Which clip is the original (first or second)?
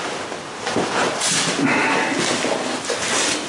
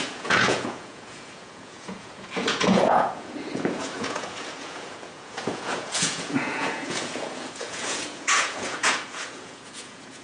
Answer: first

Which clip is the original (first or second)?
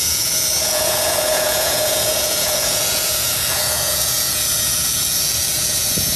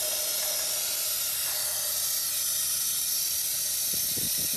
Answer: second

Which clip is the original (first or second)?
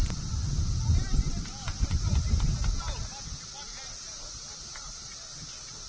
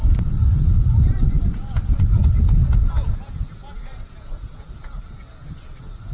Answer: first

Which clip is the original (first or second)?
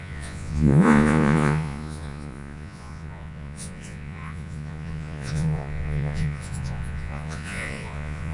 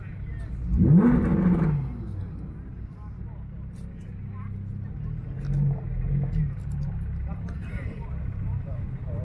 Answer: second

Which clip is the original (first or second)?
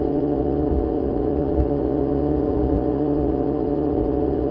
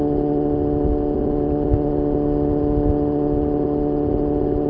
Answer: second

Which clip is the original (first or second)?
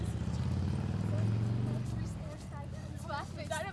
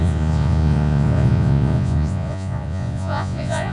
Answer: first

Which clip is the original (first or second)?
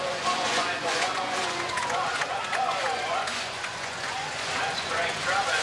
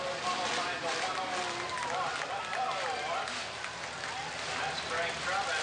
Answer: second